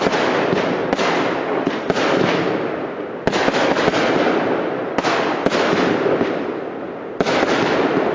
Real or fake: real